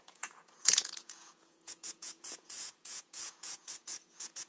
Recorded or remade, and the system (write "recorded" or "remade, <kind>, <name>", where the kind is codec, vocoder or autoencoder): remade, vocoder, Vocos